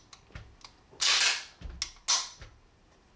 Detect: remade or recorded recorded